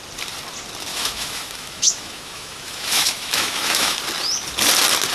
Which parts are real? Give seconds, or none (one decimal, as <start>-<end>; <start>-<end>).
0.0-0.9; 4.0-5.1